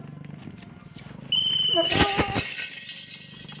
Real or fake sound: real